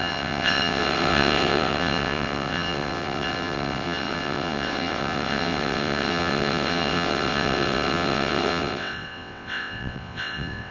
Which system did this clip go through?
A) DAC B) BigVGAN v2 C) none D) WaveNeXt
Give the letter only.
D